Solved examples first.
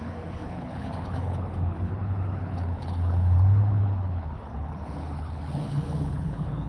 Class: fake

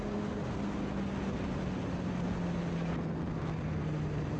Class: real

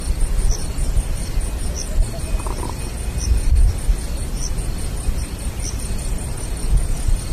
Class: real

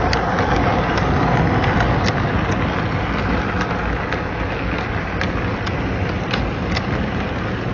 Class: real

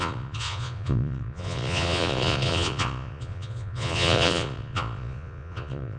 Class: fake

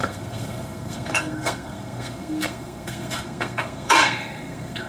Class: fake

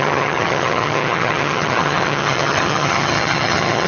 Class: fake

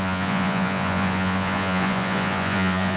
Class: fake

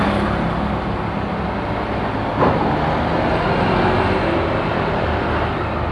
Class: real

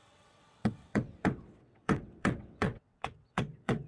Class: fake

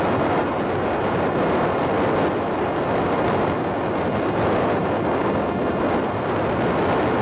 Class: real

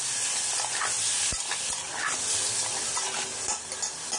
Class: real